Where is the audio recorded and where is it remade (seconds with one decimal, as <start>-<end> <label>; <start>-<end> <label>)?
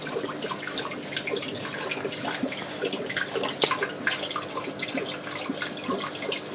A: 0.0-6.5 recorded